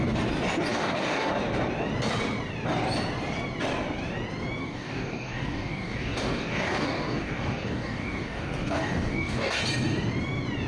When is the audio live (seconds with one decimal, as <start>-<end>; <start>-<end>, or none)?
0.0-0.7; 1.3-4.6; 9.6-10.7